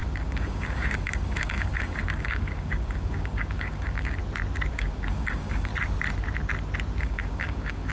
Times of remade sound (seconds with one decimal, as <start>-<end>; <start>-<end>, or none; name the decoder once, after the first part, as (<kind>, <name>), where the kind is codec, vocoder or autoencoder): 0.0-4.2 (codec, DAC); 4.7-5.7; 7.0-7.9